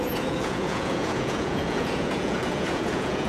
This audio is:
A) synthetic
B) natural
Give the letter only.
A